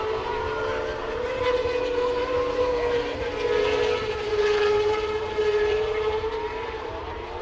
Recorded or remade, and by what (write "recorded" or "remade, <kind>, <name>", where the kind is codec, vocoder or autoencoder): remade, vocoder, BigVGAN v2